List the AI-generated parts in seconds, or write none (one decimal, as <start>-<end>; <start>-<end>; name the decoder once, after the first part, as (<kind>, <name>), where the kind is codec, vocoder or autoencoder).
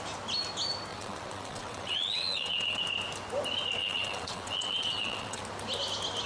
0.9-2.8 (vocoder, WaveNeXt); 3.8-5.4